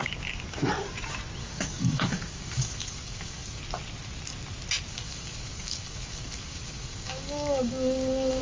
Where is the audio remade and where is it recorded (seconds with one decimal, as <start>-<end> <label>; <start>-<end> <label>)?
0.0-1.4 recorded; 1.4-3.6 remade; 3.6-4.9 recorded; 4.9-8.4 remade